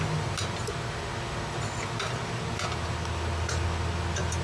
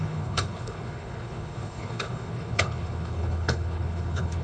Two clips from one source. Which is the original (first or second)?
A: first